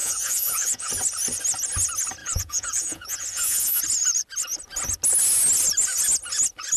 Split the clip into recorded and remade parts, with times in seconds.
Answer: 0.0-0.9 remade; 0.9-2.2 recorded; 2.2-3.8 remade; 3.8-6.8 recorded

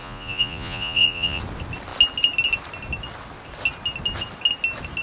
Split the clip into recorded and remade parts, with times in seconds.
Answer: 0.0-1.4 remade; 1.4-5.0 recorded

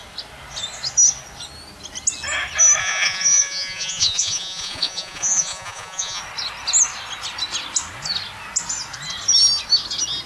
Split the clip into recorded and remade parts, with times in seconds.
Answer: 0.0-2.8 recorded; 2.8-6.2 remade; 6.2-10.3 recorded

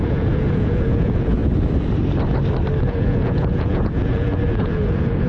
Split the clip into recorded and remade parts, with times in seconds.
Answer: 0.0-1.4 remade; 1.4-2.8 recorded; 2.8-5.3 remade

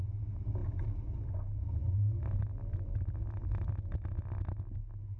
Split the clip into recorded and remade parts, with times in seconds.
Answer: 0.0-5.2 recorded

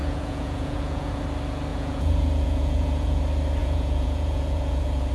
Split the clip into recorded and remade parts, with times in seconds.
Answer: 0.0-1.2 remade; 1.2-1.7 recorded; 1.7-3.2 remade; 3.2-3.6 recorded; 3.6-5.1 remade

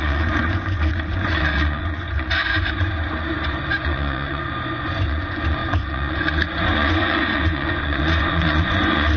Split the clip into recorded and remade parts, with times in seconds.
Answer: 0.0-9.2 remade